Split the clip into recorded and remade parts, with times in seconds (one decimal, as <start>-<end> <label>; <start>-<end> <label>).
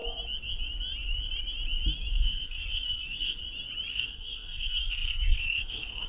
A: 0.0-2.1 recorded; 2.1-3.4 remade; 3.4-3.9 recorded; 3.9-6.1 remade